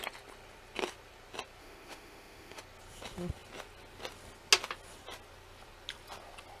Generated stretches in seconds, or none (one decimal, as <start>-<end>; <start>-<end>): 1.6-2.6